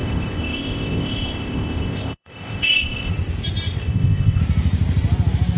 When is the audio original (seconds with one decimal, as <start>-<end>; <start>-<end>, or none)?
3.1-3.8; 4.4-5.6